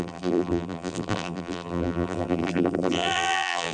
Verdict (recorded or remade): remade